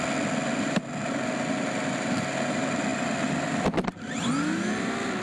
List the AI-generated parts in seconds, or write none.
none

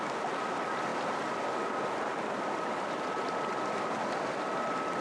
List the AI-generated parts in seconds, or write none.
none